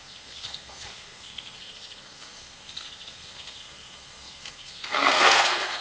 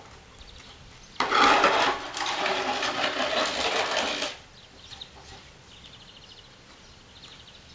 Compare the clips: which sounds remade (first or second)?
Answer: first